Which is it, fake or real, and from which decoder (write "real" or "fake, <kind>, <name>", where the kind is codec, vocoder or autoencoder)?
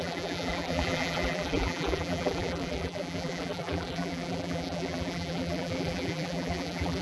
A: fake, vocoder, BigVGAN v2